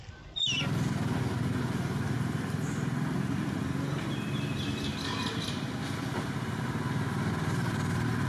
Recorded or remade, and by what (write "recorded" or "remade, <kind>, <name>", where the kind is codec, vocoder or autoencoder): recorded